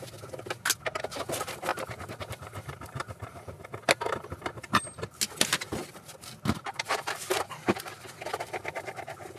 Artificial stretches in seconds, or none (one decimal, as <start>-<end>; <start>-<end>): 1.7-3.6; 5.8-6.6